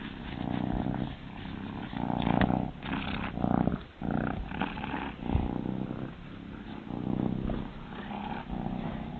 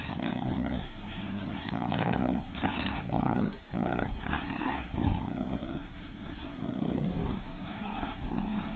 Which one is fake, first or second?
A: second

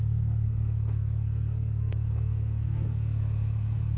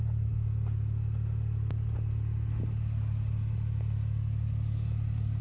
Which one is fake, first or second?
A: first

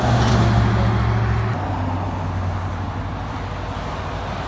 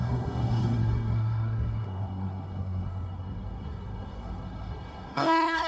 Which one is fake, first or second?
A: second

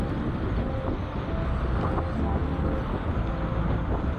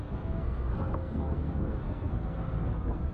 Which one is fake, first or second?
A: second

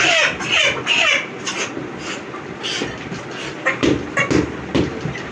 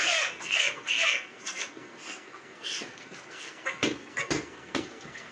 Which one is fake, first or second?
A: second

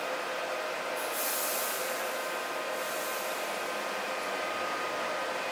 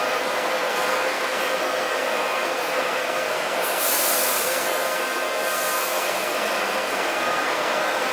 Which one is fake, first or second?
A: second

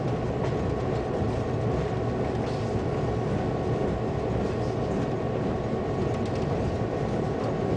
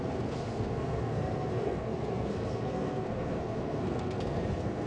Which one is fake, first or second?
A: second